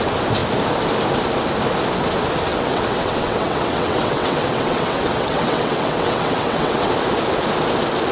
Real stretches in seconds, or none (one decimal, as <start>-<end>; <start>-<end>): 0.0-2.5; 6.9-8.1